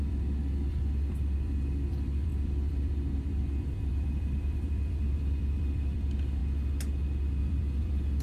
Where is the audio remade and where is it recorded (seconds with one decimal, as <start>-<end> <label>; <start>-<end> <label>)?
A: 0.0-6.4 remade; 6.4-7.4 recorded; 7.4-8.2 remade